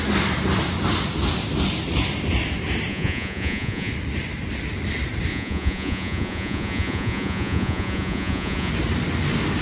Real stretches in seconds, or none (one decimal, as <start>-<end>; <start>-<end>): 0.0-2.9; 3.9-5.3; 8.7-9.6